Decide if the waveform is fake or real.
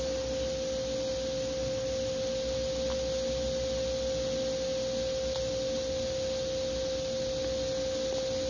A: real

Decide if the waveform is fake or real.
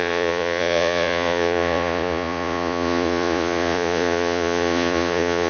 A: fake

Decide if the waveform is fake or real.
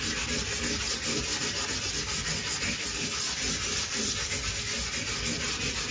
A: real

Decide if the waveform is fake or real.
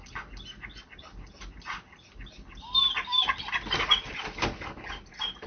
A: real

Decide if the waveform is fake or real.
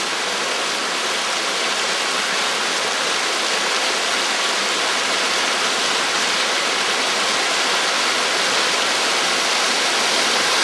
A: real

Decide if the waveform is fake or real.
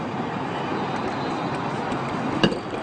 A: real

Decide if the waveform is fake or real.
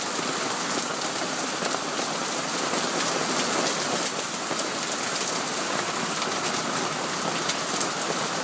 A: real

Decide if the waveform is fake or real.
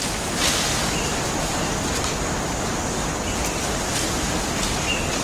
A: real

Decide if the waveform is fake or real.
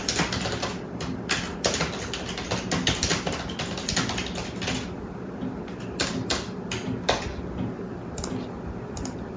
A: real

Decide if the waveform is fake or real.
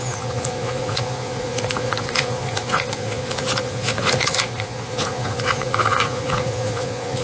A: fake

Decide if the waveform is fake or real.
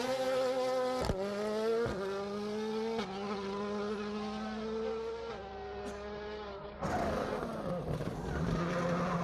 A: real